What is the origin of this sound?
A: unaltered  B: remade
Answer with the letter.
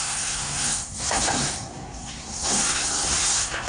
B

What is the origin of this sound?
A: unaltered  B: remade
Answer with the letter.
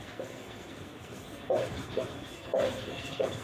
B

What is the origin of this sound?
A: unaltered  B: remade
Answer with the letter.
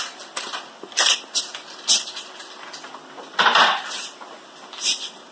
A